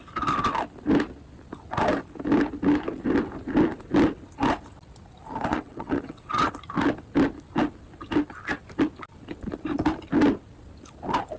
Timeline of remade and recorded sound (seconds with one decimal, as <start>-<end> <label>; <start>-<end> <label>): 0.0-5.5 recorded; 5.5-6.5 remade; 6.5-11.4 recorded